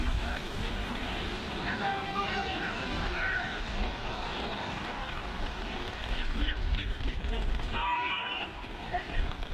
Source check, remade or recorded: remade